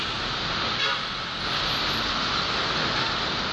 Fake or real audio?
real